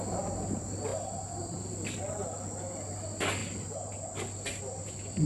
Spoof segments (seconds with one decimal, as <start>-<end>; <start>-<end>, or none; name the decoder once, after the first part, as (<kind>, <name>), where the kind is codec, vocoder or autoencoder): none